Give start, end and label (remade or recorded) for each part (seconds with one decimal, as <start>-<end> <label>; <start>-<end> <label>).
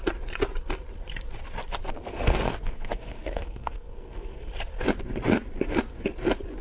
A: 0.0-1.8 recorded; 1.8-4.5 remade; 4.5-6.6 recorded